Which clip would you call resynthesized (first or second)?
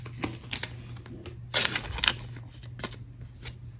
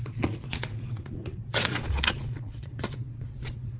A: second